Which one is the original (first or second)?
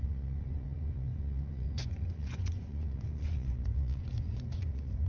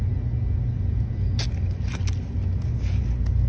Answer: second